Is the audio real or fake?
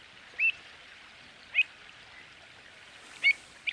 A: real